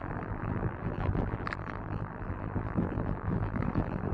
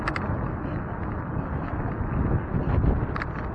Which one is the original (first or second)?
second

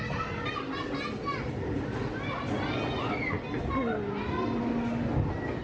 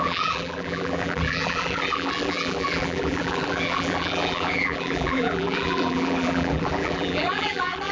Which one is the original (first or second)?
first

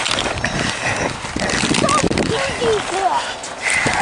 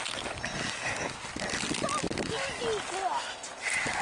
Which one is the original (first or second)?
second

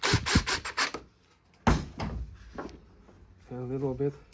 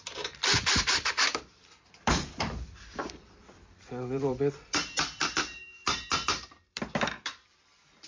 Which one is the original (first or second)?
first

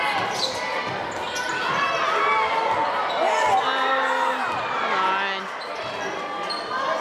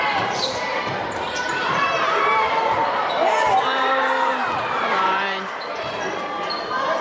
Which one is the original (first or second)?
first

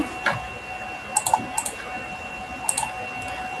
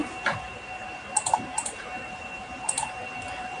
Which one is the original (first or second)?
first